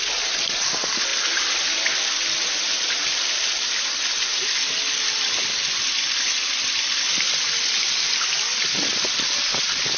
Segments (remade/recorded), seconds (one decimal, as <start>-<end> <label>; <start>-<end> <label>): 0.0-10.0 recorded

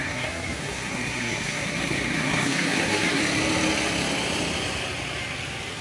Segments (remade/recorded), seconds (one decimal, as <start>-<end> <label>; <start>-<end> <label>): 0.0-3.2 remade; 3.2-5.8 recorded